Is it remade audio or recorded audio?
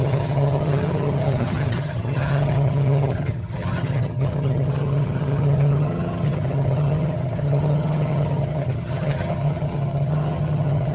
remade